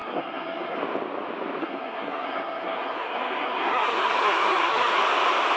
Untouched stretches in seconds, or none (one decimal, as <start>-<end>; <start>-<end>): 0.8-1.6; 5.0-5.6